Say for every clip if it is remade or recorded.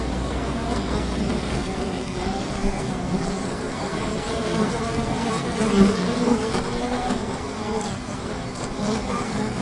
remade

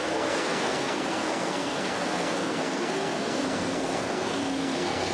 remade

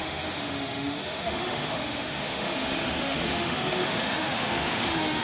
remade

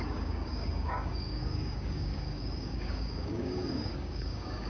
remade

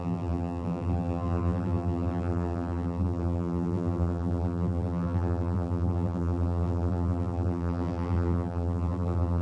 remade